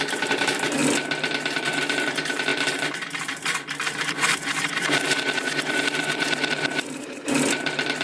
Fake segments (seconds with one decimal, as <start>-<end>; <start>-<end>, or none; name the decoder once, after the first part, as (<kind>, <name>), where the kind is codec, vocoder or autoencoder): 0.0-0.8 (vocoder, BigVGAN v2); 1.6-8.0